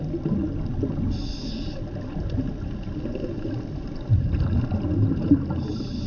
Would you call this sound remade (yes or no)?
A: no